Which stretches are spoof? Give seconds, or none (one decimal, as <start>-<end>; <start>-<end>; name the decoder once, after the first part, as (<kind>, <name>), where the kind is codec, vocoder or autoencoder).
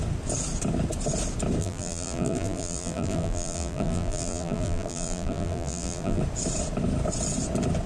1.6-6.2 (vocoder, BigVGAN v2)